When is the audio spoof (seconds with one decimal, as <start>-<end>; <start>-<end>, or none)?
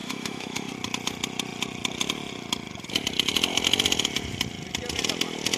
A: 0.0-0.7